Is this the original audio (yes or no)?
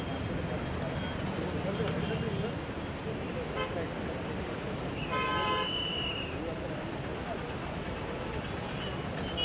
yes